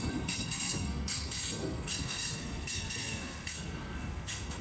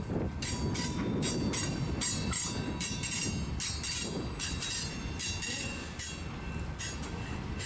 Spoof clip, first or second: first